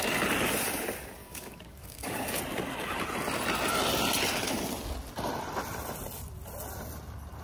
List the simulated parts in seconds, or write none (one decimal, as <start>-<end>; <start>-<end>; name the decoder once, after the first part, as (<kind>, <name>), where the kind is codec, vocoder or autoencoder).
1.2-2.4 (codec, DAC)

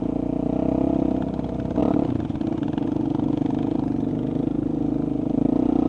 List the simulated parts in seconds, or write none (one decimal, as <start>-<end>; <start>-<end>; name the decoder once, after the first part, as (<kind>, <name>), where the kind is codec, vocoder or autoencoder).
none

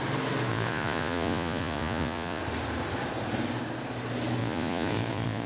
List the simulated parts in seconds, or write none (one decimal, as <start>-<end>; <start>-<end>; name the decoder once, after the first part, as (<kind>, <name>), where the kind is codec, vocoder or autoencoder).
0.5-2.4 (vocoder, Vocos); 4.4-5.5

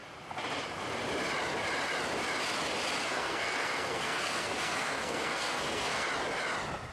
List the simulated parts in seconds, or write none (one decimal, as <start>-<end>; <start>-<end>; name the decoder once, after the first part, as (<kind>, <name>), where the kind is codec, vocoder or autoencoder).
3.0-6.1 (codec, SNAC)